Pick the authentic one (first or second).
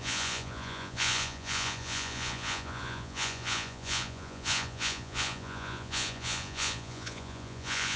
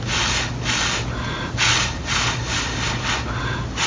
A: second